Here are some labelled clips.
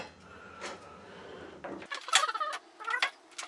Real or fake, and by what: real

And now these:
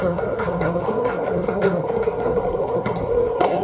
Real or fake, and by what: fake, codec, SNAC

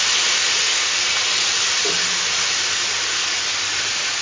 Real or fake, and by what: real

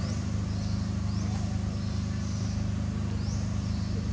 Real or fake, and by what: real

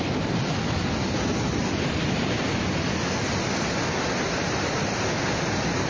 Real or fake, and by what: real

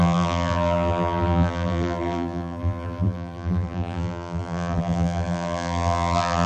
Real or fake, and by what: fake, vocoder, BigVGAN v2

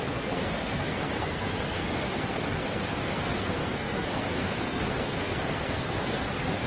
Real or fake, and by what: fake, codec, SNAC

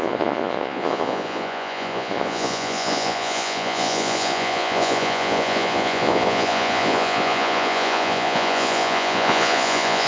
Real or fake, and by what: fake, vocoder, Vocos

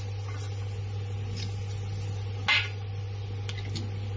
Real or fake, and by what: real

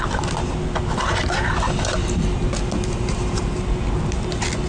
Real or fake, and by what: real